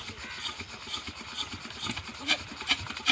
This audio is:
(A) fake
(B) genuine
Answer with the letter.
B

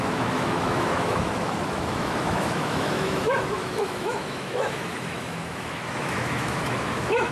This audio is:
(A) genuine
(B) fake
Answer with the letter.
B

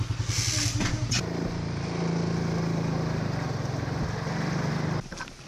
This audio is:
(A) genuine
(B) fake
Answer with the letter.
A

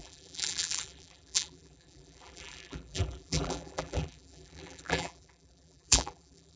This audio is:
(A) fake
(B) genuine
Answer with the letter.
A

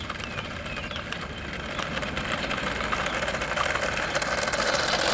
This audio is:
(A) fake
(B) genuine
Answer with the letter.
B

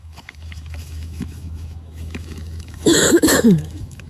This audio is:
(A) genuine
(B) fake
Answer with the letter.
B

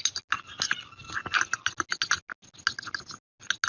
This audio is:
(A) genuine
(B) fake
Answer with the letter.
A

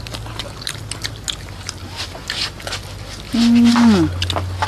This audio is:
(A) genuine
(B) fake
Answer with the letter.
A